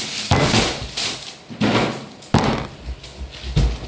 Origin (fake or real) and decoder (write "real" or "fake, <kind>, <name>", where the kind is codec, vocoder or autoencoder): real